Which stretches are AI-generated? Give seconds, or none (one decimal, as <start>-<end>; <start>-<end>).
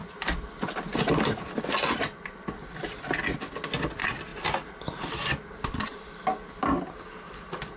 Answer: none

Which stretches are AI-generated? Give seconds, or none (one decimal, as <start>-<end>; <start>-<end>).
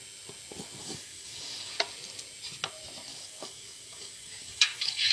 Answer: 0.8-1.7; 3.1-5.1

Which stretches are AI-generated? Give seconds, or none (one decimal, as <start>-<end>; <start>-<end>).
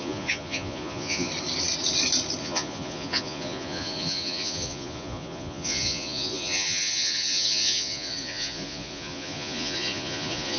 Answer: 0.0-1.3; 2.4-10.6